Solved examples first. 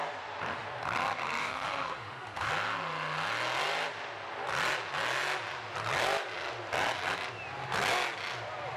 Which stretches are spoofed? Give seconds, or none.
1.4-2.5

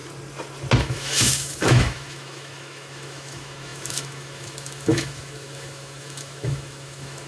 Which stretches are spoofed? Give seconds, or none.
0.8-7.3

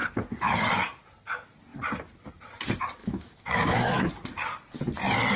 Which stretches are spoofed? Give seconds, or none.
3.0-4.1

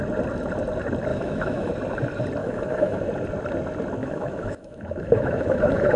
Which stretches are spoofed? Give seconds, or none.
1.1-1.7; 2.4-3.0; 4.0-6.0

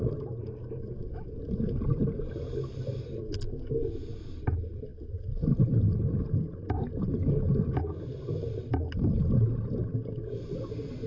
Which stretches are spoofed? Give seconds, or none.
none